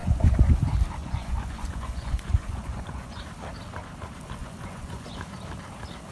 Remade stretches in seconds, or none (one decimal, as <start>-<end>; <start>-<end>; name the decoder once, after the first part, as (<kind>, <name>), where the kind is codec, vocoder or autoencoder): 0.0-0.5 (vocoder, Vocos); 1.0-3.2; 4.4-5.2